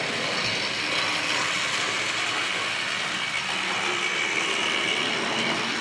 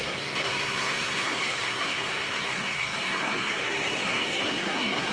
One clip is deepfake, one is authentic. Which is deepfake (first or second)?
second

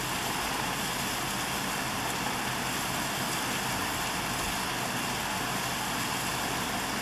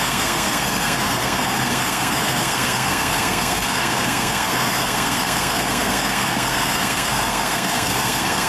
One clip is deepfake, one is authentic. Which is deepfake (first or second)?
second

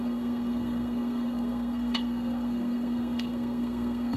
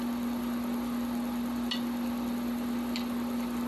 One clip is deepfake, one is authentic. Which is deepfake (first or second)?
first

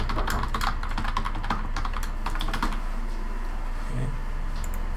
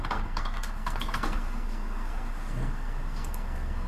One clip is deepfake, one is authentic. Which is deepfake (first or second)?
second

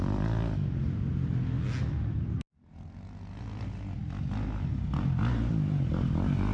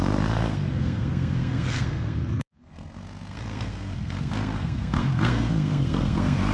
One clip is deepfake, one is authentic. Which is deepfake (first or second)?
second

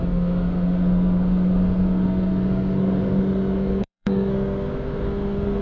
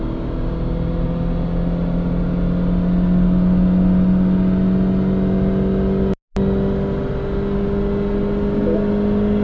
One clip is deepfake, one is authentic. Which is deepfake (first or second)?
first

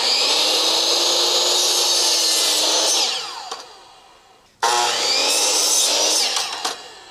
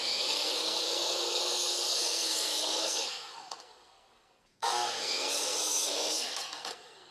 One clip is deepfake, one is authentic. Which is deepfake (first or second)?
second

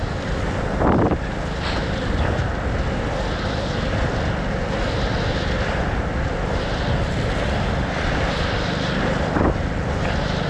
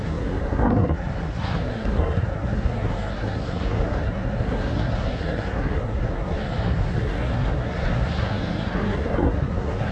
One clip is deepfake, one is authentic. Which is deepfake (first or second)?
second